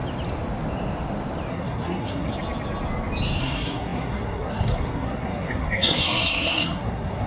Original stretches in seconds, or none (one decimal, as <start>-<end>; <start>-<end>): 0.0-1.5; 2.3-3.4